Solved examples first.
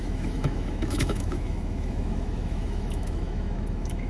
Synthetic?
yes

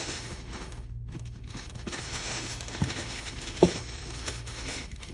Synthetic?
yes